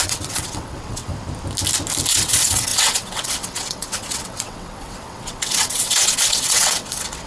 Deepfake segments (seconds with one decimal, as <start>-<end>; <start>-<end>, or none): 0.0-1.1; 2.1-7.3